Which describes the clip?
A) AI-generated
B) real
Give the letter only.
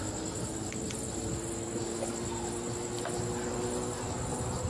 B